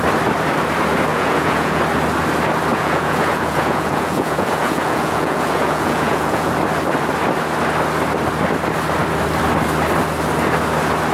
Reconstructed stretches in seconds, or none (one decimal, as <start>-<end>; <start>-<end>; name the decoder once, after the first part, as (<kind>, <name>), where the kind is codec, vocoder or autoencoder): 1.1-1.8 (vocoder, Vocos); 2.7-6.5